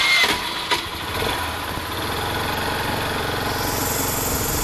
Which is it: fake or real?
real